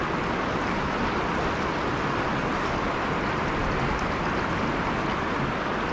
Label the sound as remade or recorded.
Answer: recorded